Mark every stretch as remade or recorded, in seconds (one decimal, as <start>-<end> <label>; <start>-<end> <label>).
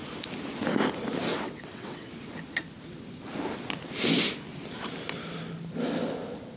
0.0-1.3 recorded; 1.3-2.1 remade; 2.1-6.6 recorded